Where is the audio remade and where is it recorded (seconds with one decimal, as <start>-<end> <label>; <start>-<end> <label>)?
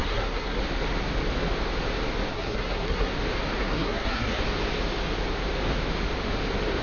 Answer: 0.0-0.6 remade; 0.6-2.3 recorded; 2.3-3.1 remade; 3.1-3.6 recorded; 3.6-4.4 remade; 4.4-6.8 recorded